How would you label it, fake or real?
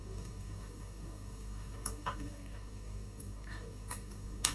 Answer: fake